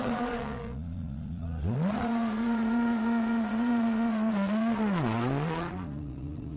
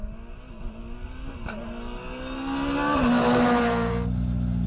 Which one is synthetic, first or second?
first